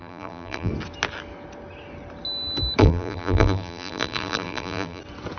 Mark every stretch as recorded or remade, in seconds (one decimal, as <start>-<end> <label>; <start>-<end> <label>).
0.0-0.7 remade; 0.7-2.8 recorded; 2.8-5.0 remade; 5.0-5.4 recorded